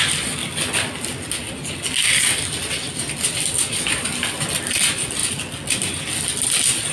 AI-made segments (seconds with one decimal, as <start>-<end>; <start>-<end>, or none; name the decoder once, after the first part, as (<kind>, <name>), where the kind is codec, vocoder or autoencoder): none